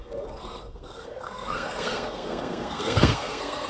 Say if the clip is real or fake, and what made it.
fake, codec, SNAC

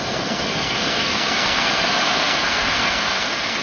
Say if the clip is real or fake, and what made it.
fake, codec, SNAC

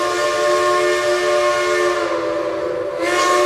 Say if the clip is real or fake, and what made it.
real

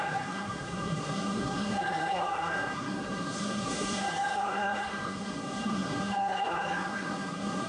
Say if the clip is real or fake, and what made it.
fake, codec, SNAC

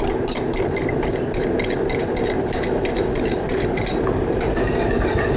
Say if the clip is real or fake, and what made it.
real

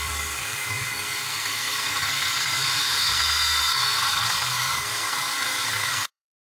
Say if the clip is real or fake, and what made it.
fake, codec, SNAC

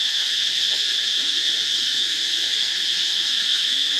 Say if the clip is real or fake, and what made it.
fake, codec, SNAC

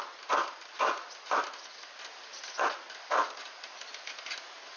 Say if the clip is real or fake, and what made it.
real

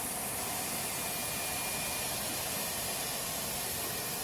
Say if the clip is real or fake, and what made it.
real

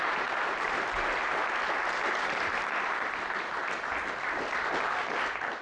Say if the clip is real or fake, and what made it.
real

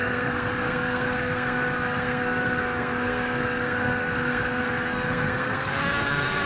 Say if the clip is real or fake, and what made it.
fake, codec, SNAC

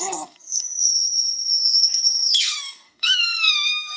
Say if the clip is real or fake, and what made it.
fake, codec, SNAC